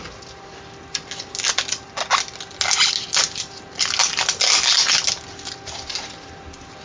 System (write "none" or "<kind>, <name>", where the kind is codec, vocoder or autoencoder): none